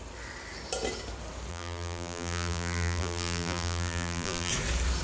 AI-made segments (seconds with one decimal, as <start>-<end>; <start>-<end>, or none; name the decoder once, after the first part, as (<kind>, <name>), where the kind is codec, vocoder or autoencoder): 1.5-4.5 (vocoder, BigVGAN v2)